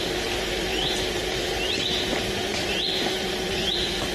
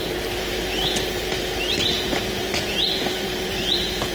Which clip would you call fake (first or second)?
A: first